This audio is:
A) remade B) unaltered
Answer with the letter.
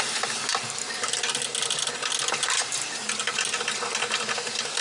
B